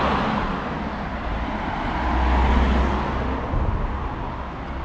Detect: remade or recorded recorded